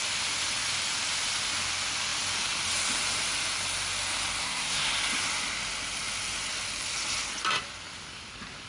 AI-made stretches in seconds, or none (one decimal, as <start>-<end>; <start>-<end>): 4.4-4.9